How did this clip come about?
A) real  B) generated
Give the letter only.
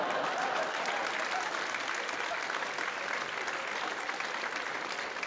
A